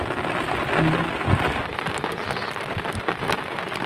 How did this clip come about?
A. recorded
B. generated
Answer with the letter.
A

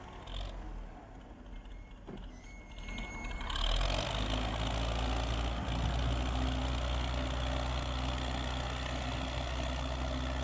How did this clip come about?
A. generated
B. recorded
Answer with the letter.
B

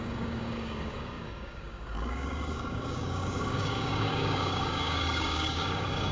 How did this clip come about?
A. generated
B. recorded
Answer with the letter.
A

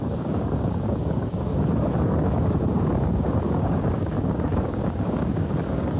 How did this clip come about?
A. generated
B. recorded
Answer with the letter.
A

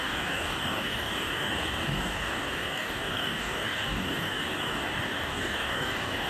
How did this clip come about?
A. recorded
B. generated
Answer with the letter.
B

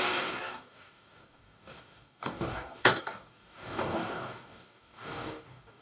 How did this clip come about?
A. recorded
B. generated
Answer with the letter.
B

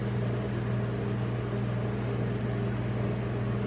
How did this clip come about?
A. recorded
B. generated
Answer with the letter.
A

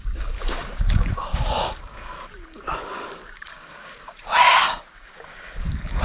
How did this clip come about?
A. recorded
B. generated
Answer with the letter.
B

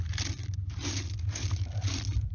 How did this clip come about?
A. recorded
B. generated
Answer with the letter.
A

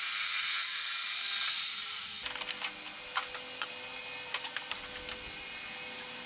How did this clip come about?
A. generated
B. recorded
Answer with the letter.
B